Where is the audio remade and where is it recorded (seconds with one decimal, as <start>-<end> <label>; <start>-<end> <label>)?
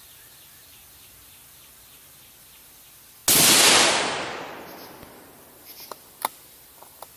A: 0.0-7.2 recorded